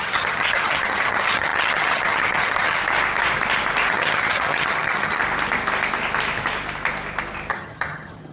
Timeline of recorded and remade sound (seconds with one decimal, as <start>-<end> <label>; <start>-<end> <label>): 0.0-2.8 remade; 2.8-3.9 recorded; 3.9-5.2 remade; 5.2-7.5 recorded; 7.5-8.3 remade

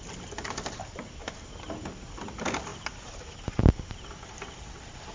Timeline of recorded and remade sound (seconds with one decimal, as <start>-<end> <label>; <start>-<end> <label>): 0.0-5.1 recorded

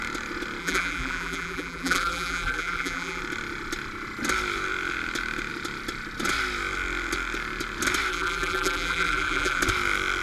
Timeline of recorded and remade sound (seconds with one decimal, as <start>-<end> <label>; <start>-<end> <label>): 0.0-0.6 recorded; 0.6-3.2 remade; 3.2-8.1 recorded; 8.1-9.6 remade; 9.6-10.2 recorded

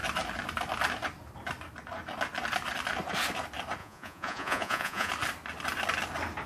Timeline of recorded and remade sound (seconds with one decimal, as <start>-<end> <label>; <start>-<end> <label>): 0.0-3.8 recorded; 3.8-5.1 remade; 5.1-6.5 recorded